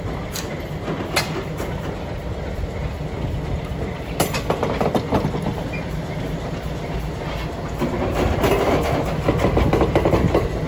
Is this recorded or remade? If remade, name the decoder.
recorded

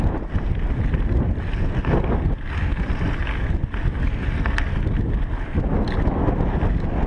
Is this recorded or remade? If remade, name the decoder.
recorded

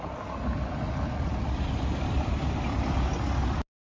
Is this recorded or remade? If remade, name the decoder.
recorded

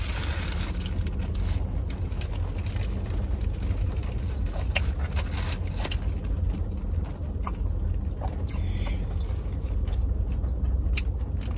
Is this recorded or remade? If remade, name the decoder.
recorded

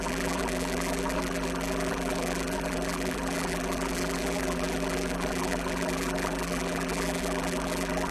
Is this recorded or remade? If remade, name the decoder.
remade, vocoder, BigVGAN v2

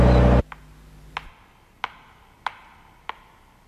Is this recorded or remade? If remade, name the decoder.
recorded